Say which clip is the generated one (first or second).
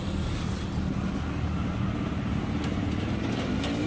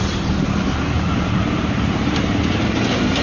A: second